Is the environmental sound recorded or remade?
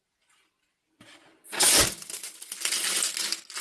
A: recorded